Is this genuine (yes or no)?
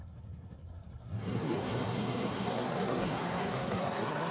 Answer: no